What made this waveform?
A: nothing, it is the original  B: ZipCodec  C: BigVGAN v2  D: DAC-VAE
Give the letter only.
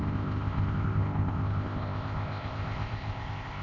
B